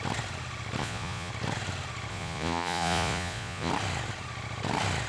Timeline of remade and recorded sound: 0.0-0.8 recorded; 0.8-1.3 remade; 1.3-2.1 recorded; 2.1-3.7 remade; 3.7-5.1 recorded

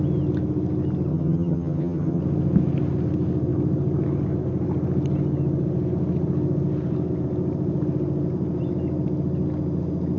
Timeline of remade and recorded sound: 0.0-1.1 recorded; 1.1-2.2 remade; 2.2-10.2 recorded

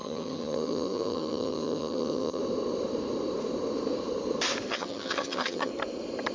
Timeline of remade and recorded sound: 0.0-2.4 remade; 2.4-4.7 recorded; 4.7-5.7 remade; 5.7-6.3 recorded